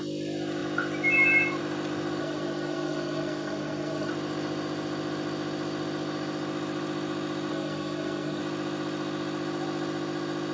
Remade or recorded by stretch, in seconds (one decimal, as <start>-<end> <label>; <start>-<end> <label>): 0.0-2.2 recorded; 2.2-4.1 remade; 4.1-7.5 recorded; 7.5-8.4 remade; 8.4-10.5 recorded